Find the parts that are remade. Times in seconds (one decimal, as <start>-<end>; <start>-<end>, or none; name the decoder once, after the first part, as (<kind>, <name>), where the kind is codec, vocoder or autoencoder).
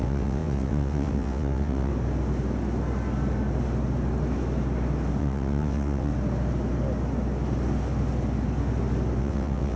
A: 0.0-1.9 (vocoder, WaveNeXt); 5.2-6.1; 9.2-9.8